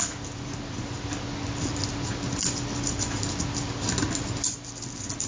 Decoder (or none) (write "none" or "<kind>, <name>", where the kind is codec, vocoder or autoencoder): none